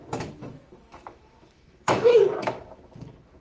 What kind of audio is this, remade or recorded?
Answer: remade